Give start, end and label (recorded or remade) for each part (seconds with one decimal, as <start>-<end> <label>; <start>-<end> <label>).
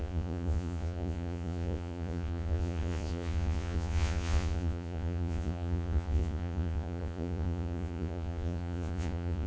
0.0-9.5 remade